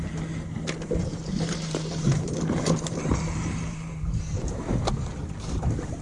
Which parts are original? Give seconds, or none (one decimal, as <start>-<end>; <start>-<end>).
0.0-1.1; 4.7-6.0